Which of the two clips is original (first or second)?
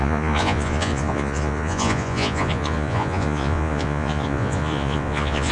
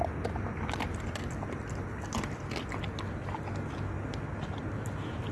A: second